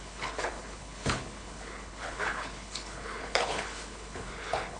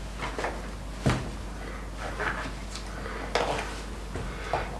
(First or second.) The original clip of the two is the second